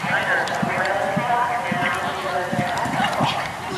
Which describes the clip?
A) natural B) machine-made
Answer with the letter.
A